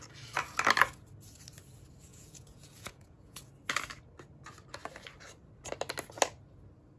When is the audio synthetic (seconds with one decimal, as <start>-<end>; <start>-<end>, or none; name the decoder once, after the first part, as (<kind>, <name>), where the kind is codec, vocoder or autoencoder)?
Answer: 2.1-3.5 (vocoder, Vocos)